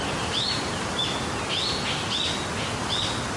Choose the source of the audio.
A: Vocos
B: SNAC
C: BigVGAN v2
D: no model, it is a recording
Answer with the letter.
D